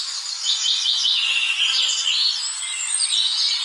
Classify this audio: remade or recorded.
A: remade